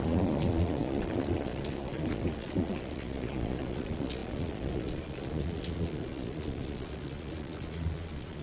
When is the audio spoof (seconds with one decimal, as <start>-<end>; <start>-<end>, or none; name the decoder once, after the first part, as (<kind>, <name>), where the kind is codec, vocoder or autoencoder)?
0.0-8.4 (vocoder, Vocos)